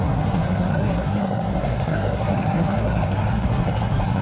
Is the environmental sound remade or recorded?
remade